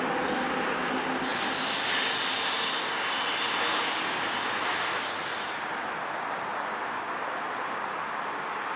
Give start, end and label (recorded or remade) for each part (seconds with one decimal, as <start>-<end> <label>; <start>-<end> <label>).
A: 0.0-8.8 recorded